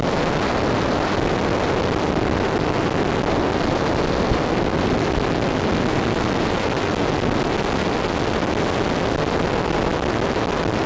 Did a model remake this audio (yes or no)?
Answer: no